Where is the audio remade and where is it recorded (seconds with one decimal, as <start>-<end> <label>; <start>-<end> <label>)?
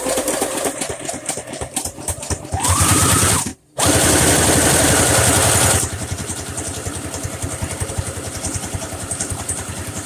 0.0-3.5 remade; 3.5-7.9 recorded; 7.9-10.1 remade